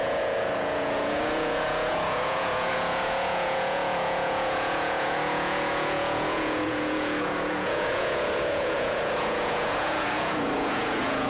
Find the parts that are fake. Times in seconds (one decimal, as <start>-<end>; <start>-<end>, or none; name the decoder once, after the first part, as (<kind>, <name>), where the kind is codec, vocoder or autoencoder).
0.0-11.3 (vocoder, Vocos)